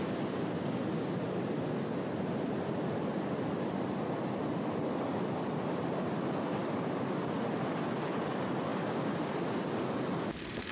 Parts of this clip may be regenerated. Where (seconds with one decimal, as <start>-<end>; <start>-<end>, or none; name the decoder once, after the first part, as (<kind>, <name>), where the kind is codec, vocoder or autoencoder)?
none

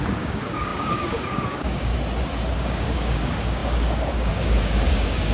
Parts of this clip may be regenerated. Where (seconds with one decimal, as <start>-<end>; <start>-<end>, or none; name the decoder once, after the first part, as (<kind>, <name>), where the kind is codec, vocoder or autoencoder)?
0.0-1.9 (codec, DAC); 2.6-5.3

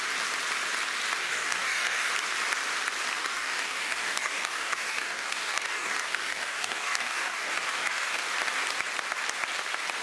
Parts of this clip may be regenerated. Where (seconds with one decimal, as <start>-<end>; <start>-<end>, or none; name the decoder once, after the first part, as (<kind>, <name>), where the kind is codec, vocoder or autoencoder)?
1.2-2.1 (codec, DAC); 3.2-8.2

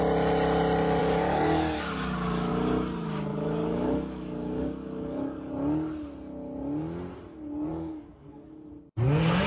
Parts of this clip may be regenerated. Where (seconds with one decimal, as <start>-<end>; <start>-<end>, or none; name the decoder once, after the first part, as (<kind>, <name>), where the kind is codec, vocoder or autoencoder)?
1.0-2.5 (codec, DAC); 3.3-5.5; 7.7-8.7

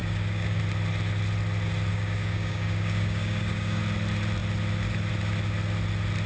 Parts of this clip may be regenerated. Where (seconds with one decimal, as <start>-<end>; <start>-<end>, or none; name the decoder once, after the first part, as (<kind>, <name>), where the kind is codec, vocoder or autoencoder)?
0.0-0.6 (codec, DAC); 1.9-3.8

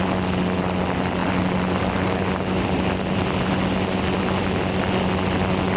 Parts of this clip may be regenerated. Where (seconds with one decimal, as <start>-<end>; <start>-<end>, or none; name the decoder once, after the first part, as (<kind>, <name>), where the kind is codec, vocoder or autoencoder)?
none